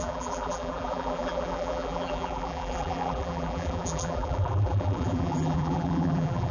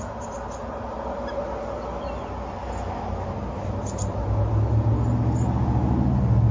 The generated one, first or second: first